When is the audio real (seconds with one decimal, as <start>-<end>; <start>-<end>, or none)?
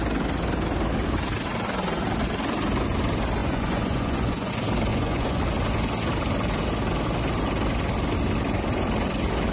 0.0-3.4; 4.5-4.9; 5.4-9.5